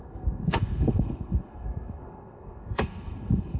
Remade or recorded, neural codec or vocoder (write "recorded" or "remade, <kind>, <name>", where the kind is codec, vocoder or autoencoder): remade, codec, SNAC